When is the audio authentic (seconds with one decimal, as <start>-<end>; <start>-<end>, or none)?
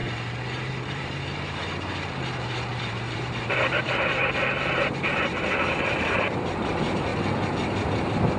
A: 0.0-0.6; 1.6-2.7; 7.1-8.4